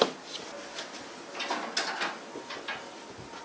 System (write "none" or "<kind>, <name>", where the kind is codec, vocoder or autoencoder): none